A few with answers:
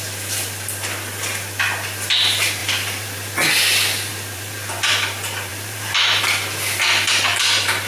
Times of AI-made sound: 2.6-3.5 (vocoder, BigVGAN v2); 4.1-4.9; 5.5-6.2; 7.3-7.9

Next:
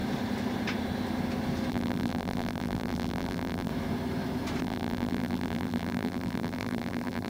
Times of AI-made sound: 1.7-3.7 (vocoder, BigVGAN v2); 4.6-7.3

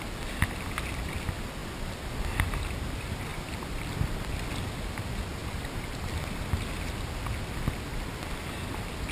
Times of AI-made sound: none

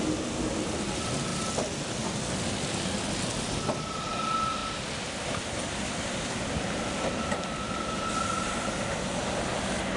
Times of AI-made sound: 4.6-9.6 (vocoder, BigVGAN v2)

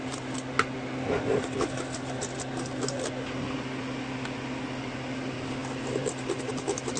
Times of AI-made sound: none

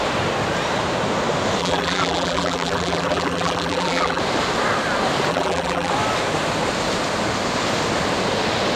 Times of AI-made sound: 1.6-4.2 (vocoder, BigVGAN v2); 5.3-5.9

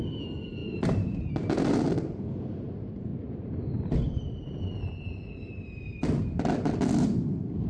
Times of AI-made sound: 0.6-1.3 (vocoder, BigVGAN v2)

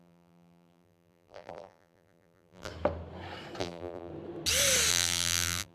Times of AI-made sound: 0.0-2.7 (vocoder, BigVGAN v2); 3.6-4.1; 4.9-5.7